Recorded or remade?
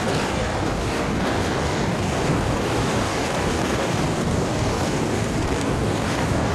remade